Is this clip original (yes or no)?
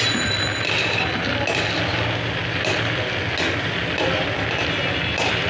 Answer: yes